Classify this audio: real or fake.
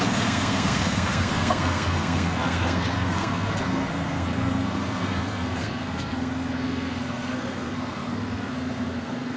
fake